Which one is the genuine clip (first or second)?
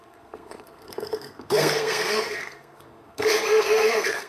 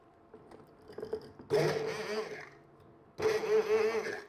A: second